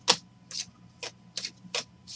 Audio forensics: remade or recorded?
recorded